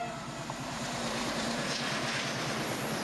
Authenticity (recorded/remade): recorded